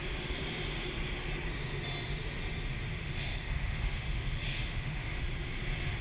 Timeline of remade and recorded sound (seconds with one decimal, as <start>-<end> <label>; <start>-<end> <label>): 0.0-3.0 recorded; 3.0-5.2 remade; 5.2-6.0 recorded